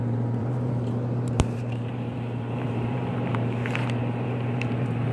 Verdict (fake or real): fake